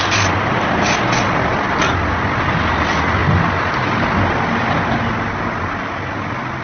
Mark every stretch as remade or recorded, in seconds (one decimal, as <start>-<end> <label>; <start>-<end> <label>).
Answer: 0.0-6.6 recorded